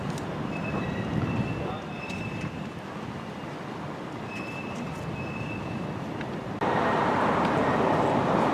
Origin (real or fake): fake